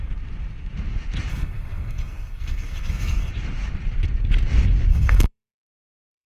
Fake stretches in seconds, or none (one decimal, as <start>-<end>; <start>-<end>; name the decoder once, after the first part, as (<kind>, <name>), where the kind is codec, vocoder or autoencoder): 1.3-3.3 (codec, SNAC); 4.9-6.3